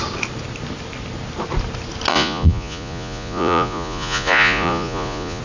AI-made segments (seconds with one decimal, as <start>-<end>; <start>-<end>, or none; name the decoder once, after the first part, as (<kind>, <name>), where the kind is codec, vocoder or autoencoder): 2.1-5.4 (vocoder, Vocos)